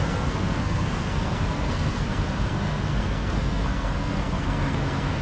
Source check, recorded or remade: remade